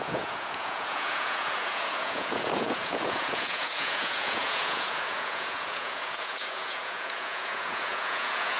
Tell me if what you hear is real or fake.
fake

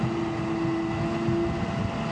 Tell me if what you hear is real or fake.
real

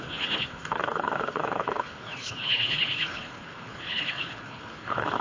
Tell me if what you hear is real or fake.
fake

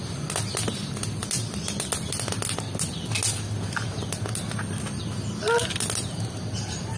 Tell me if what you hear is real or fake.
real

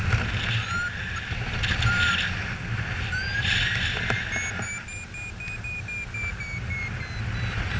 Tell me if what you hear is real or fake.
real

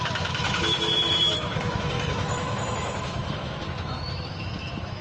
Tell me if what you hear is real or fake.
fake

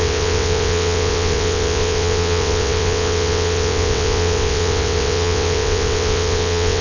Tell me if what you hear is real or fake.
fake